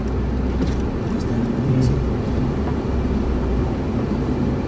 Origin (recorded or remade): recorded